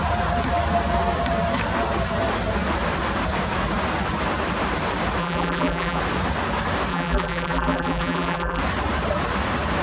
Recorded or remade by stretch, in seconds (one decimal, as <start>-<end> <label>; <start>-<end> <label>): 0.0-5.2 recorded; 5.2-6.0 remade; 6.0-6.9 recorded; 6.9-8.6 remade; 8.6-9.8 recorded

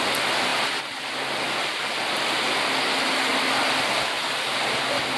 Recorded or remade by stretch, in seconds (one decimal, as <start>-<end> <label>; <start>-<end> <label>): 0.0-3.3 recorded; 3.3-3.9 remade; 3.9-5.2 recorded

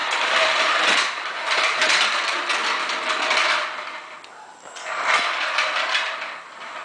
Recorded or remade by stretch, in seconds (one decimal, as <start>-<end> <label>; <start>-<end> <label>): 0.0-1.8 remade; 1.8-6.8 recorded

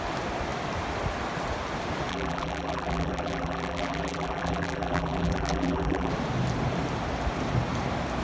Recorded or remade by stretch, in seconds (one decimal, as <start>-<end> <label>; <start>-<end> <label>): 0.0-2.1 recorded; 2.1-6.1 remade; 6.1-8.2 recorded

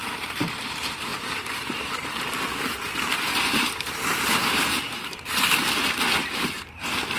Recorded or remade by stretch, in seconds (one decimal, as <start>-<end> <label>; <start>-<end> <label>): 0.0-7.2 remade

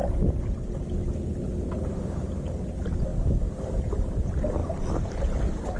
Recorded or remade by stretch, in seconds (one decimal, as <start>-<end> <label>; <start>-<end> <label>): 0.0-1.7 recorded; 1.7-3.1 remade; 3.1-3.8 recorded; 3.8-4.6 remade; 4.6-5.1 recorded; 5.1-5.8 remade

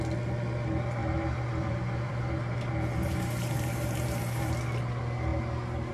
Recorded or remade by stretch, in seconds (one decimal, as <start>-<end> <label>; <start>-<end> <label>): 0.0-1.0 recorded; 1.0-4.5 remade; 4.5-5.9 recorded

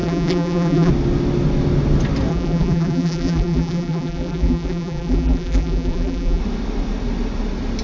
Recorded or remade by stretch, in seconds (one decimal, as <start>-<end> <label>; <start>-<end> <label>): 0.0-0.9 remade; 0.9-2.3 recorded; 2.3-6.4 remade; 6.4-7.8 recorded